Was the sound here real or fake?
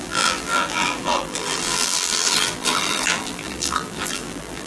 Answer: fake